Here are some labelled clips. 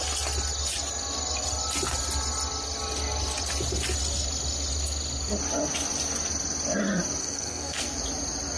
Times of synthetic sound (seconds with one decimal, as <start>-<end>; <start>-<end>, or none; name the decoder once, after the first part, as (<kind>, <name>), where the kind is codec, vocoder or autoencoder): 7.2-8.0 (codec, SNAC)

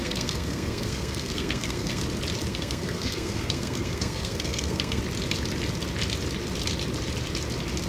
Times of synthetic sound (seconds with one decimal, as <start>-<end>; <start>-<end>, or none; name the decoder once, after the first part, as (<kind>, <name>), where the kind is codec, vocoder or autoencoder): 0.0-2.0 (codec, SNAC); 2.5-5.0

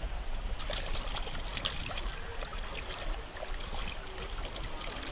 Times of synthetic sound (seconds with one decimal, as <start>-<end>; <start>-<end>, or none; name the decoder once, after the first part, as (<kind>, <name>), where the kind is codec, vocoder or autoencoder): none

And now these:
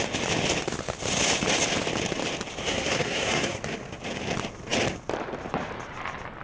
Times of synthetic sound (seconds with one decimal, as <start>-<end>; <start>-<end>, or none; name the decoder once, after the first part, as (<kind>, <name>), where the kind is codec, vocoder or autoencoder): 2.6-3.6 (codec, SNAC)